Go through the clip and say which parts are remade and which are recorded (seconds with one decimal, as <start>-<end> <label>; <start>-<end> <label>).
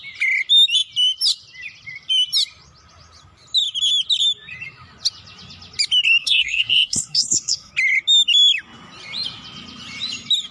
0.0-6.2 recorded; 6.2-7.7 remade; 7.7-10.5 recorded